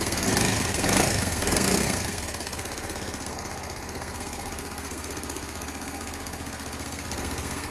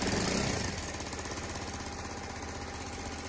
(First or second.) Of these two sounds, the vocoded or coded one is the first